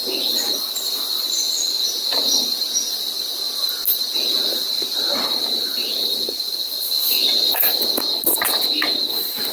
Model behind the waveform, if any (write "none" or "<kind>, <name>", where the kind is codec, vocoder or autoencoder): none